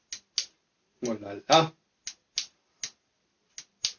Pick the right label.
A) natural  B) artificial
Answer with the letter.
A